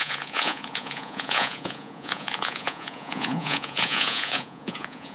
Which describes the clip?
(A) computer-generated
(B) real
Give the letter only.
A